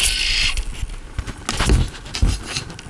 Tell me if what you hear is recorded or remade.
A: recorded